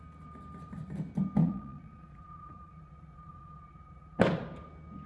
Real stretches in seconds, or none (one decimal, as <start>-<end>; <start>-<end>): 0.0-1.4; 4.2-5.1